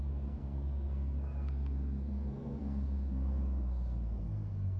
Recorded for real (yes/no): no